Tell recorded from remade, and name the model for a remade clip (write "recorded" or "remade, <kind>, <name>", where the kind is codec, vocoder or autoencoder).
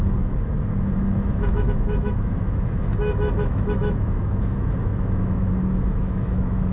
remade, autoencoder, DAC-VAE